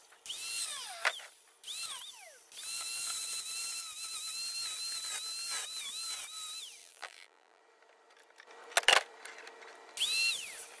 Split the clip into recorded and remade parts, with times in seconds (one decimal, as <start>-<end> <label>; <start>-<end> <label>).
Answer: 0.0-6.8 recorded; 6.8-7.6 remade; 7.6-10.8 recorded